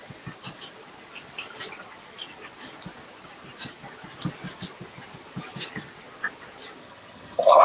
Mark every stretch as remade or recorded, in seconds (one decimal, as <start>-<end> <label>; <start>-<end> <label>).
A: 0.0-6.8 recorded; 6.8-7.6 remade

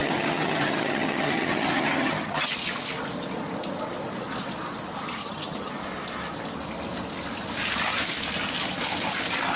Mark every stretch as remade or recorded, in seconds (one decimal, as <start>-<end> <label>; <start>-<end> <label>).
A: 0.0-2.5 remade; 2.5-5.2 recorded; 5.2-5.7 remade; 5.7-9.6 recorded

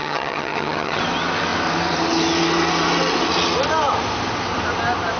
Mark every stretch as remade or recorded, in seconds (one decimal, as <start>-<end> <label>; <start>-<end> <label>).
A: 0.0-1.0 remade; 1.0-5.2 recorded

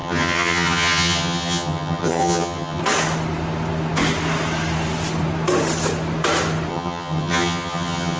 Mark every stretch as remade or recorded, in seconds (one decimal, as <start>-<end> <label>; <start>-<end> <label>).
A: 0.0-2.8 remade; 2.8-6.7 recorded; 6.7-8.2 remade

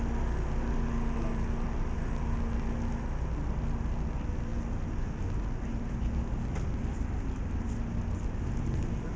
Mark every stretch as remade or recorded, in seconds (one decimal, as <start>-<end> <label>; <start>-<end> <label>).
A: 0.0-9.2 recorded

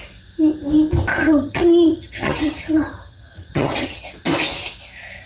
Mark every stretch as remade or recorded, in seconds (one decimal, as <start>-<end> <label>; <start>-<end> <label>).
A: 0.0-1.1 recorded; 1.1-4.1 remade; 4.1-5.3 recorded